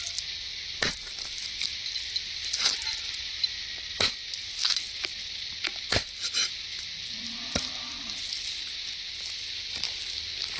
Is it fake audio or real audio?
real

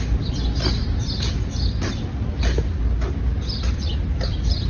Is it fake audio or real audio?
real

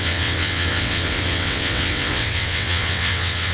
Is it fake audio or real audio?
fake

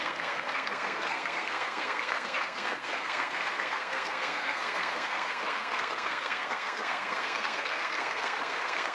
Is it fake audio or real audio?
fake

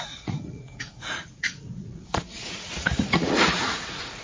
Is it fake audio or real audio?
fake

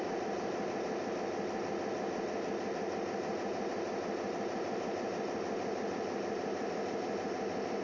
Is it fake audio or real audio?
real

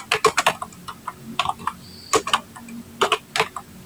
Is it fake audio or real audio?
real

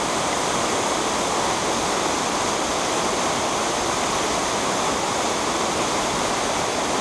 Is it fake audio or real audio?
real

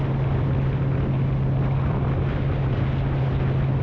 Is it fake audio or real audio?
real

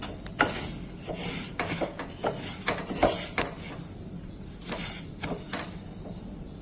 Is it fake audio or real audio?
real